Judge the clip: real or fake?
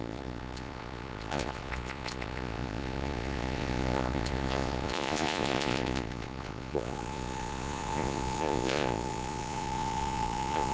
fake